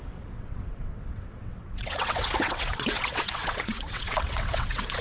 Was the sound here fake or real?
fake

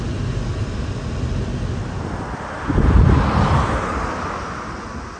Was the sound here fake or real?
real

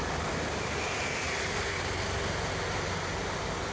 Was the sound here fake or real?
real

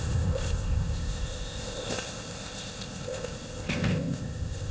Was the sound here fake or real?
fake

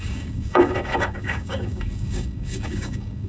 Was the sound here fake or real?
fake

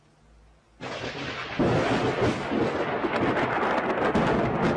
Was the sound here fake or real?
real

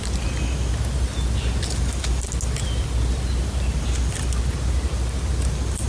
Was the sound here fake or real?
real